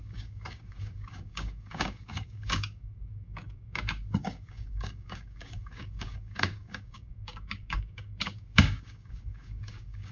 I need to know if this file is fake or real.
fake